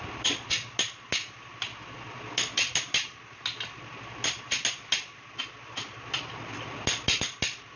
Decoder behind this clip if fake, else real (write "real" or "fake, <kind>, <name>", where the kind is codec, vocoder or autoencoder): real